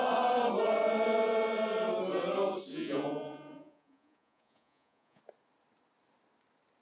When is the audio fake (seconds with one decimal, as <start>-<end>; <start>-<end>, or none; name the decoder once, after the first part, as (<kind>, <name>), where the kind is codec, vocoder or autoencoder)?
2.7-5.2 (vocoder, Vocos)